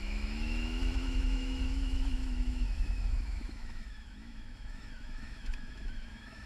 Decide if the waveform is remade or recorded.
remade